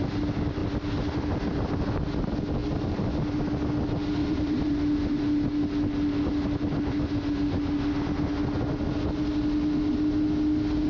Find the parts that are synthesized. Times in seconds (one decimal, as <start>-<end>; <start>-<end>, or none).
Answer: 4.2-4.8